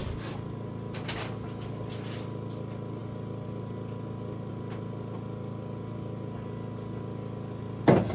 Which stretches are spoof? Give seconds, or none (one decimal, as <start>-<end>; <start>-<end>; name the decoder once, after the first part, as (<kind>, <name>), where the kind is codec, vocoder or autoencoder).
none